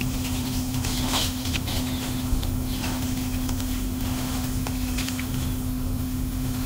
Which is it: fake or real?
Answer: fake